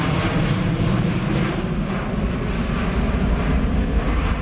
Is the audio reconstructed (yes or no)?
no